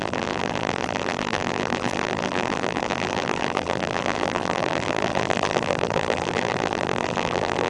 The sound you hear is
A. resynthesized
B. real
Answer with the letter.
A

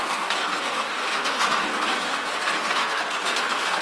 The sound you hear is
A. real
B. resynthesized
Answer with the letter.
B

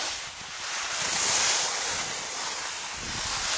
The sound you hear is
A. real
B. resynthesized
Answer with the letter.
A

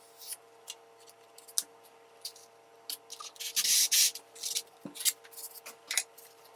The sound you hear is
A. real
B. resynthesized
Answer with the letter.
A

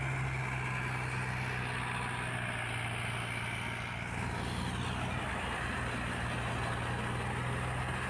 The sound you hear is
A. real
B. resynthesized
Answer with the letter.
A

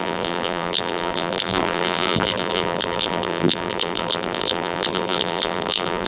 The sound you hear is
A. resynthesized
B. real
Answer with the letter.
A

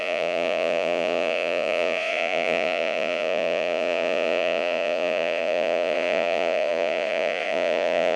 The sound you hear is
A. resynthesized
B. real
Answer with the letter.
A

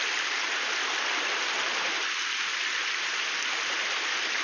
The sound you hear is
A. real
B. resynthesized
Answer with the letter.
A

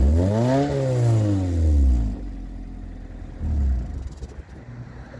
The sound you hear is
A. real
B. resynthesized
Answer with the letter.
A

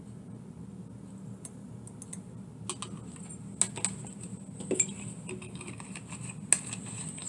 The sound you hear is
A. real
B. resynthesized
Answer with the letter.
A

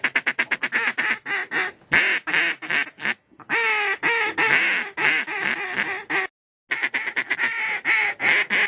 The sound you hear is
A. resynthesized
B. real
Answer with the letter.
B